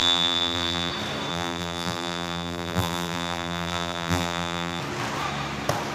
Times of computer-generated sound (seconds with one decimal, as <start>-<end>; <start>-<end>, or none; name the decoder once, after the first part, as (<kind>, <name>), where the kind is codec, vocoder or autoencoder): 0.0-0.9 (vocoder, BigVGAN v2); 1.3-4.8